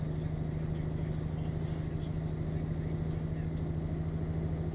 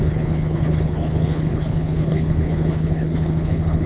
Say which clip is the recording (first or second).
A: first